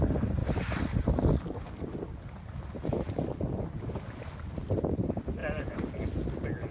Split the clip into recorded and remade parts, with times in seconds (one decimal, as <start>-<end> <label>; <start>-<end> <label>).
0.0-5.4 recorded; 5.4-6.0 remade; 6.0-6.7 recorded